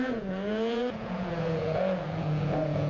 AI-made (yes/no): yes